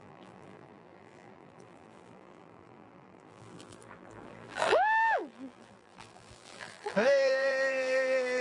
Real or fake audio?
fake